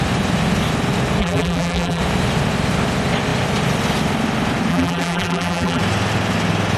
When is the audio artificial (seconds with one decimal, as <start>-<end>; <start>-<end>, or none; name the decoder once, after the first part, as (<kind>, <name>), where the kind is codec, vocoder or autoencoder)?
1.2-2.0 (vocoder, BigVGAN v2); 4.7-5.8